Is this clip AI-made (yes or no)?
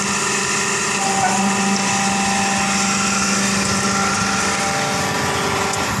no